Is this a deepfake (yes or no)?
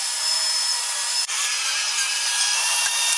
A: yes